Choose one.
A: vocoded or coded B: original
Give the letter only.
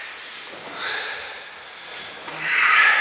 B